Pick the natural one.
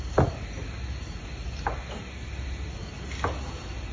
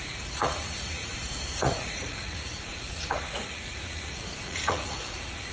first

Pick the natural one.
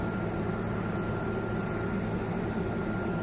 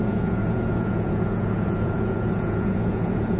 first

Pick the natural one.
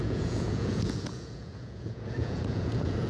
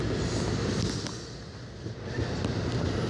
second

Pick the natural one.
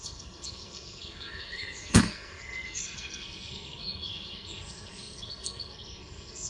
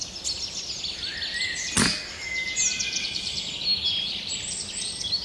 second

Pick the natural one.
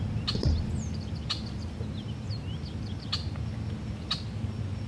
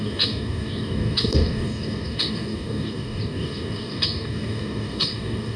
first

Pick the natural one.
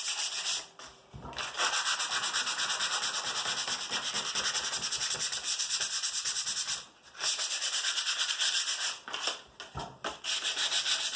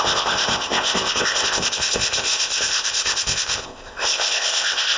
first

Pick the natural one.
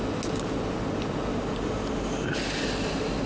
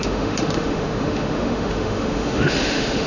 first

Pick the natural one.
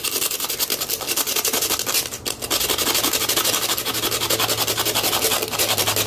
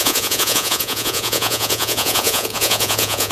first